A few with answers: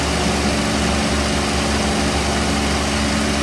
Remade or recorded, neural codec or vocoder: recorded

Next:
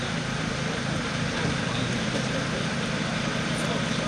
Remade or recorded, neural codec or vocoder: recorded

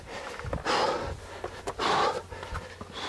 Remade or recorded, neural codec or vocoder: recorded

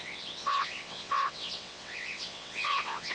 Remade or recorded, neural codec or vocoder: remade, vocoder, WaveNeXt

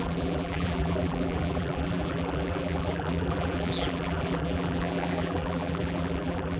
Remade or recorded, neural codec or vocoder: remade, vocoder, BigVGAN v2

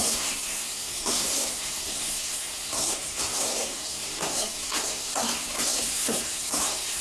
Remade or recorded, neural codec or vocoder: remade, codec, SNAC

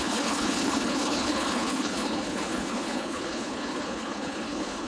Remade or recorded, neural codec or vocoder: remade, codec, HILCodec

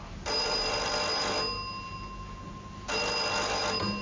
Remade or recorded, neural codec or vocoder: recorded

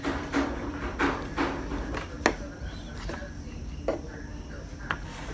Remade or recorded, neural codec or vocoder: recorded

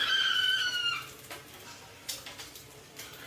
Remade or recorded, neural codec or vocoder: remade, vocoder, BigVGAN v2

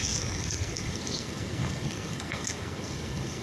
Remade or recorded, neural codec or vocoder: remade, codec, SNAC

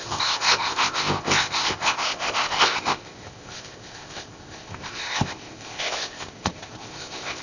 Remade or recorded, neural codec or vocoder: remade, codec, ZipCodec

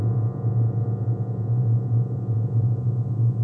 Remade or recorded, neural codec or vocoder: remade, vocoder, Vocos